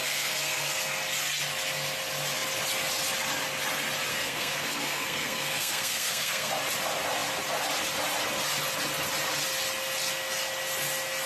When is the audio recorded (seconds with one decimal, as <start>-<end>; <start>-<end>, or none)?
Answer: 0.8-4.1; 6.5-11.3